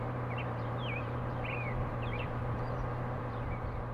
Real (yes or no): no